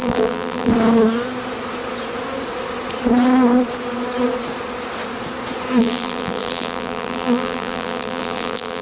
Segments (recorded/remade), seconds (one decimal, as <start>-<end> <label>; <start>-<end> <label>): 0.0-0.7 remade; 0.7-5.8 recorded; 5.8-8.8 remade